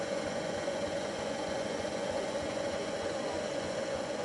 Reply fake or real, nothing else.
fake